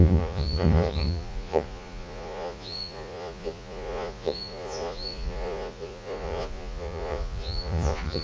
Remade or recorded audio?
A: remade